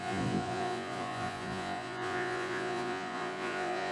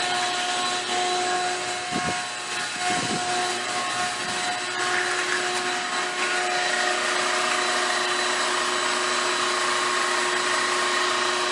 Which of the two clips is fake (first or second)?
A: first